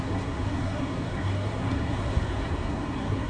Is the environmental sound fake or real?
fake